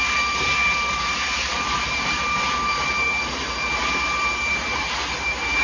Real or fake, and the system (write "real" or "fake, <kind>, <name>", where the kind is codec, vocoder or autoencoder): fake, vocoder, BigVGAN v2